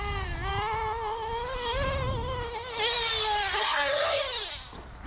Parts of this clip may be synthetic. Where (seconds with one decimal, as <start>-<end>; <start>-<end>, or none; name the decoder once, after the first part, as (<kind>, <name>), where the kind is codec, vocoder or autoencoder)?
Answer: 3.6-4.2 (codec, SNAC)